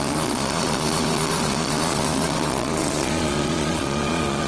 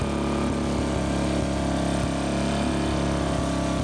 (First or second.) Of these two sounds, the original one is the second